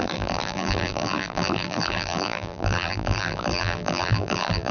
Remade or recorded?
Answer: remade